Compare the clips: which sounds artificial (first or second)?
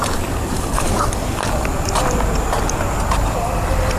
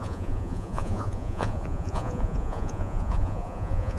second